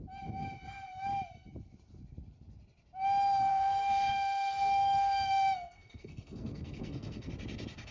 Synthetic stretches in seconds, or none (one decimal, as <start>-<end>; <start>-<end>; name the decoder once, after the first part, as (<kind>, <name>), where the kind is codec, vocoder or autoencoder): 3.5-7.3 (codec, SNAC)